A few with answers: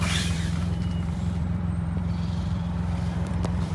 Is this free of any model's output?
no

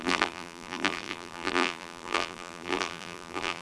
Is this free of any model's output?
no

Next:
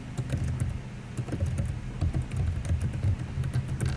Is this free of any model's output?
yes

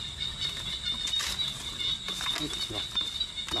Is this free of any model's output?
yes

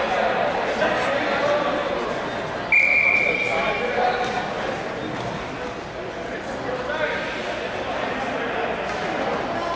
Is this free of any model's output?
yes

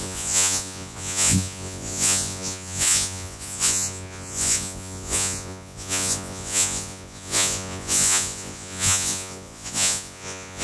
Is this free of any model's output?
no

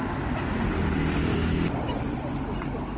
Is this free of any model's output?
yes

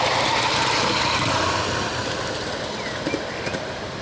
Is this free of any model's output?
yes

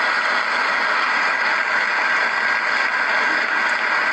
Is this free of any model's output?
yes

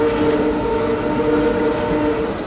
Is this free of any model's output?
yes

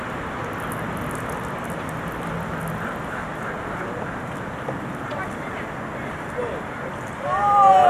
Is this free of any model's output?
yes